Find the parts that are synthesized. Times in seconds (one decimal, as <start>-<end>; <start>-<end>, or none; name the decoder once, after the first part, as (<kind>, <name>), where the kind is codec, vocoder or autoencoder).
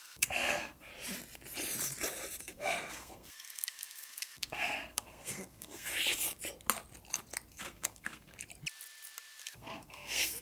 0.0-0.9 (codec, SNAC); 2.4-5.9; 7.5-8.3; 9.4-10.4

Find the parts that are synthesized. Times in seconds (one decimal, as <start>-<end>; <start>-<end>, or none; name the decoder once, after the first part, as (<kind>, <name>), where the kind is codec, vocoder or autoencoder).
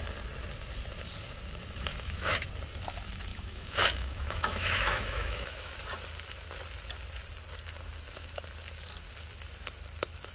1.9-2.5 (autoencoder, DAC-VAE); 3.3-5.7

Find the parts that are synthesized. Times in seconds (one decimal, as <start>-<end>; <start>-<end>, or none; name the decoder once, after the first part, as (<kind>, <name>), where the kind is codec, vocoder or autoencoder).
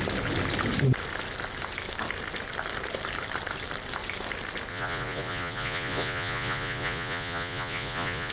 4.7-8.3 (vocoder, Vocos)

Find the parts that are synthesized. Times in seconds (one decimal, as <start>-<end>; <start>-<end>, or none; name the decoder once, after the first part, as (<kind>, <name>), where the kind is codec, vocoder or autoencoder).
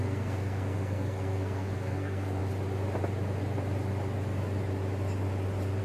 0.0-2.4 (codec, SNAC)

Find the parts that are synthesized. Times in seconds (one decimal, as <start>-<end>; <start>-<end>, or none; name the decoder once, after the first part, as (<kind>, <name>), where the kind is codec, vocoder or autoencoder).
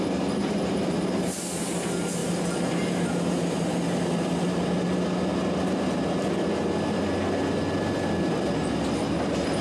0.4-1.6 (vocoder, BigVGAN v2); 2.2-4.6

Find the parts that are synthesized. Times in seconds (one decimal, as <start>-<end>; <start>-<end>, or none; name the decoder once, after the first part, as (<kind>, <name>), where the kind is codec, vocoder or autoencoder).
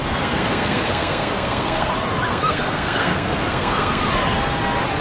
0.0-1.9 (codec, SNAC); 2.3-4.0